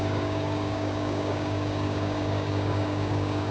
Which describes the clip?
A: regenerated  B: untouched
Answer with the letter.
A